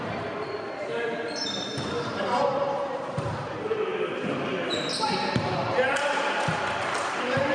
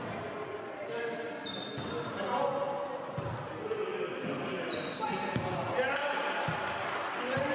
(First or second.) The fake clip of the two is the first